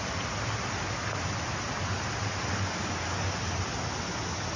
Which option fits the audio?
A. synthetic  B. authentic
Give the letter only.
B